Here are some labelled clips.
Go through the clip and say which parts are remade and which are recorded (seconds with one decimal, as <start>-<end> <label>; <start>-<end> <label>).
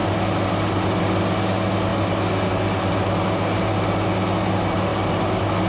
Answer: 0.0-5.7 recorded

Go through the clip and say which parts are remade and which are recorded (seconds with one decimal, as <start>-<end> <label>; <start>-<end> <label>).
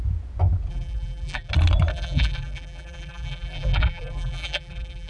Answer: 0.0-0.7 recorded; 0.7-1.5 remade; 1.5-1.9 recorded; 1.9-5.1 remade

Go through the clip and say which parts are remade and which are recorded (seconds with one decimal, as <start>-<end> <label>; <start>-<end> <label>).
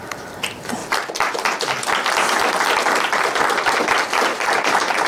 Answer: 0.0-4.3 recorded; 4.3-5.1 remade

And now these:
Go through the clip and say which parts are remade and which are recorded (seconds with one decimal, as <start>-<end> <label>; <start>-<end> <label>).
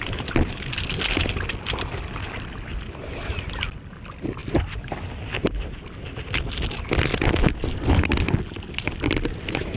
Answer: 0.0-9.8 recorded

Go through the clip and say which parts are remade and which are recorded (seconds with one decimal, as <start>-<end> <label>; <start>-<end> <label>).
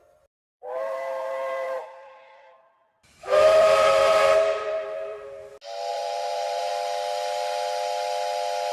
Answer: 0.0-0.5 recorded; 0.5-5.5 remade; 5.5-5.9 recorded; 5.9-6.7 remade; 6.7-8.7 recorded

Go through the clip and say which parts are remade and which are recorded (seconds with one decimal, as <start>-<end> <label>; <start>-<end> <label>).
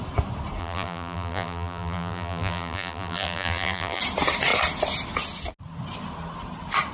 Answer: 0.0-0.6 recorded; 0.6-4.0 remade; 4.0-6.9 recorded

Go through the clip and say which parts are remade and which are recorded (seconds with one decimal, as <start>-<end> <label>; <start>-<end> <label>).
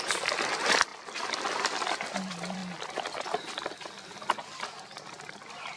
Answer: 0.0-2.6 remade; 2.6-5.1 recorded; 5.1-5.8 remade